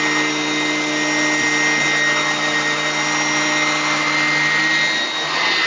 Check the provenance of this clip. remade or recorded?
recorded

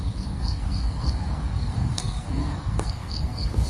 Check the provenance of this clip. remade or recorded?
remade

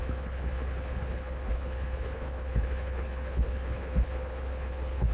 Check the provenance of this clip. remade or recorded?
remade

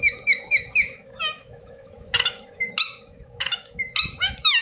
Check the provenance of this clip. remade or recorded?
remade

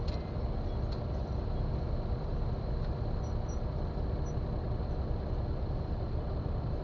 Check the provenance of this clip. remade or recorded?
recorded